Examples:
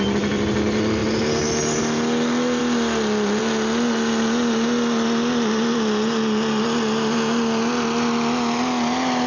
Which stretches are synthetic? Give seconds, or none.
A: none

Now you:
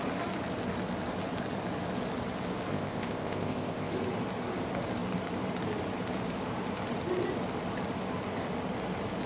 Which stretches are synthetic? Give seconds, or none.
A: 2.7-3.9

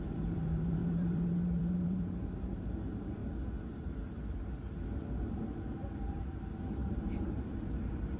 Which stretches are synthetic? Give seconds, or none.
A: 0.0-3.2; 5.9-8.2